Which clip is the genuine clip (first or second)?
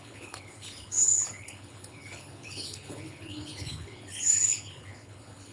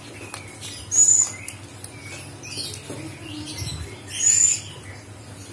second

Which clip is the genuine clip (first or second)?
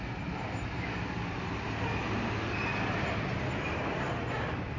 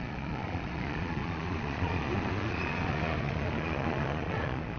first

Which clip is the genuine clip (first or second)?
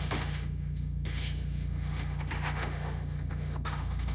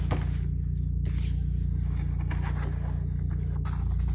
second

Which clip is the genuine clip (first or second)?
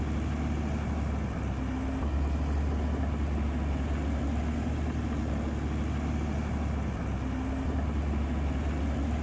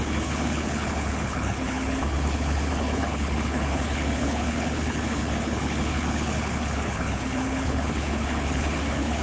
first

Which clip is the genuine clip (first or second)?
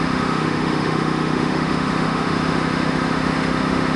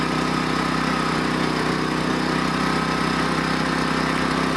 second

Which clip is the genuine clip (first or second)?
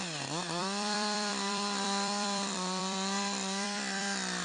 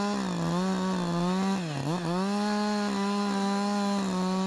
second